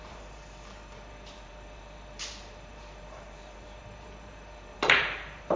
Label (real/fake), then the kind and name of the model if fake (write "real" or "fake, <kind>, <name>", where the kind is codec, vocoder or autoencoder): fake, vocoder, BigVGAN v2